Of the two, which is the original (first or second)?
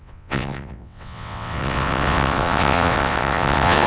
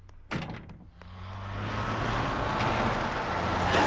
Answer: second